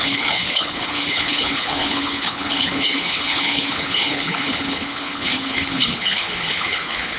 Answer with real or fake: fake